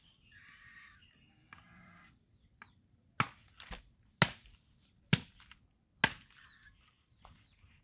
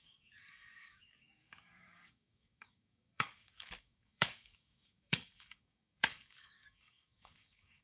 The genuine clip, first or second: first